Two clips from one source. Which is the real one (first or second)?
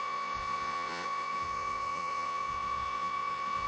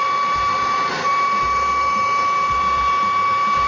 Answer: second